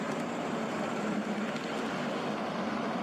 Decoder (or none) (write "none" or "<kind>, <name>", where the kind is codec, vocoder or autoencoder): none